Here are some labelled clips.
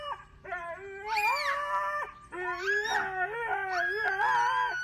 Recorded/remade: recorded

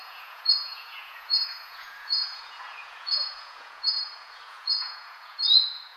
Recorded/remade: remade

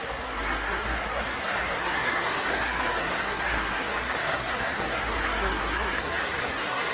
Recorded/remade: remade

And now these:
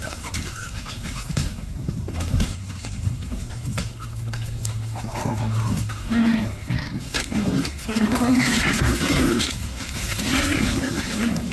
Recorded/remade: remade